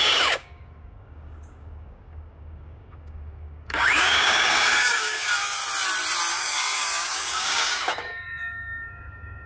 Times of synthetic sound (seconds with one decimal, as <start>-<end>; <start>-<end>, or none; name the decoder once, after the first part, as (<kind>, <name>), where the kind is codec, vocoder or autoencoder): 0.0-5.6 (codec, DAC); 6.3-9.5

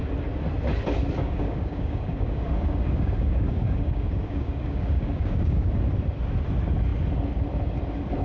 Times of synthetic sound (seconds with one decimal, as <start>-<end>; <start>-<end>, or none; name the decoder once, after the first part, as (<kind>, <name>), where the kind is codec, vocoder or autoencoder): 1.2-5.7 (codec, DAC)

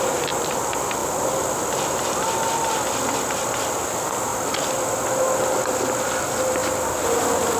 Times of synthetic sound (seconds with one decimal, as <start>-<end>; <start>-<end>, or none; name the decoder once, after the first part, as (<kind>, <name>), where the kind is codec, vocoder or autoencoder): none

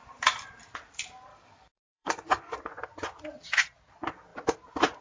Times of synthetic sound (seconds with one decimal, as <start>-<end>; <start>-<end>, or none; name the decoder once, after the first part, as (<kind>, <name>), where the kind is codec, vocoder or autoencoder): 1.3-2.6 (codec, DAC)

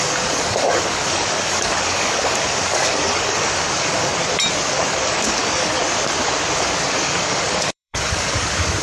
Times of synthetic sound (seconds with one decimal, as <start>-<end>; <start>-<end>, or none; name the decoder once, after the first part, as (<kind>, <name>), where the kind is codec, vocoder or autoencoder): 0.0-4.1 (codec, DAC); 4.7-5.8; 6.9-8.8

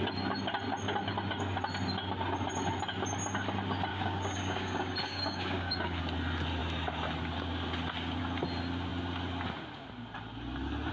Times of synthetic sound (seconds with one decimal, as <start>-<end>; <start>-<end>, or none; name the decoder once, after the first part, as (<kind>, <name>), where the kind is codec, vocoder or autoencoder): 3.9-6.0 (codec, DAC)

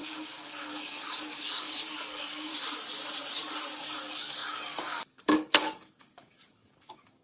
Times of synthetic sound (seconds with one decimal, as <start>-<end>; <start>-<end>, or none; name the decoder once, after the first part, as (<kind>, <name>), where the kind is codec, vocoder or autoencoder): 0.0-2.5 (codec, DAC); 3.8-7.2

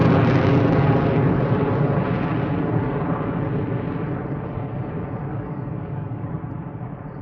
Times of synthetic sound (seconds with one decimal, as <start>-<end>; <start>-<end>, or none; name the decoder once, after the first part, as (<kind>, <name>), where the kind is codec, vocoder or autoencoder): 5.3-6.2 (codec, DAC)